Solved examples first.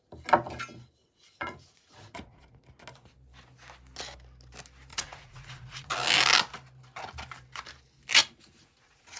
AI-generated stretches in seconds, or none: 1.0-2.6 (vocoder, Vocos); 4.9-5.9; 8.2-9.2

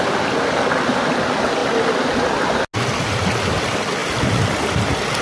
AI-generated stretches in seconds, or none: none

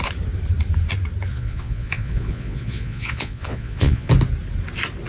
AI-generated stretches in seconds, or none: 1.3-4.1 (vocoder, Vocos)

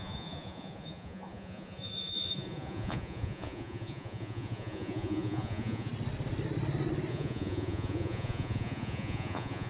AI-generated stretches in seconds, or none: 0.0-5.9 (vocoder, Vocos); 7.1-9.7

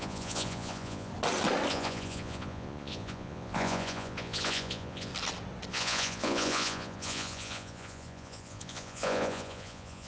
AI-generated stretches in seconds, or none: 0.0-1.1 (vocoder, Vocos); 1.7-5.1; 5.7-10.1